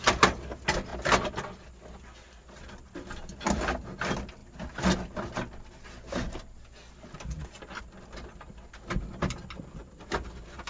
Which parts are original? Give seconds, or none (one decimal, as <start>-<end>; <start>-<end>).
0.0-10.7